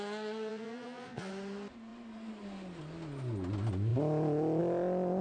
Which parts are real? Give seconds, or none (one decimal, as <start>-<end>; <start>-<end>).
0.0-0.5; 1.3-5.2